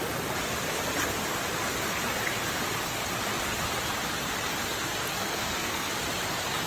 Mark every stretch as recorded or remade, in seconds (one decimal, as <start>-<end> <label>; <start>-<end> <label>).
0.0-5.1 recorded; 5.1-5.9 remade; 5.9-6.7 recorded